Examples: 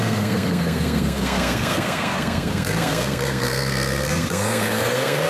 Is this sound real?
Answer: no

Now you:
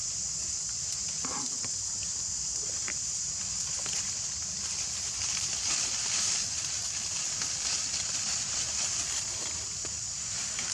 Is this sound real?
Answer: yes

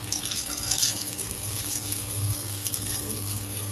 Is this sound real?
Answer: no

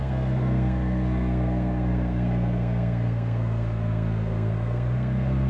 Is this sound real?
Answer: no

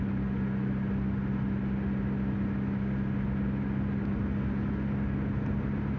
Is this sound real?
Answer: yes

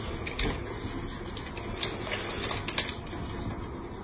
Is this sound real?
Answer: yes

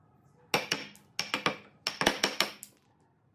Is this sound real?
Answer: yes